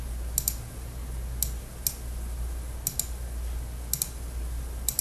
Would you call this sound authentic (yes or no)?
yes